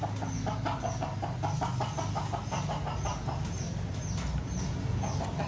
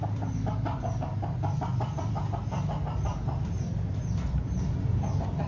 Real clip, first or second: first